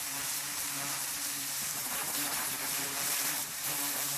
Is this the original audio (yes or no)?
no